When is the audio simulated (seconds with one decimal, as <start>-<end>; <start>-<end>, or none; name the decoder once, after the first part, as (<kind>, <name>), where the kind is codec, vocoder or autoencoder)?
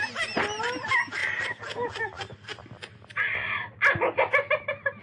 none